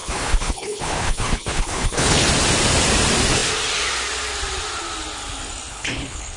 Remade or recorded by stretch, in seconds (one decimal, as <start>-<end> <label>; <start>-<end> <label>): 0.0-2.3 remade; 2.3-5.7 recorded; 5.7-6.4 remade